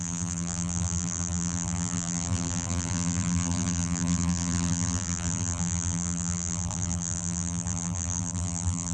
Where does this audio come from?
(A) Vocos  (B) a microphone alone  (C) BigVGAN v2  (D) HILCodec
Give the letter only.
C